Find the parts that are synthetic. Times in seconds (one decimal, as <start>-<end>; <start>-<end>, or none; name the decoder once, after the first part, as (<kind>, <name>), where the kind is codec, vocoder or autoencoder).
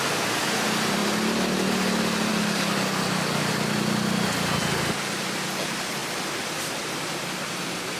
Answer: 2.3-3.5 (codec, DAC)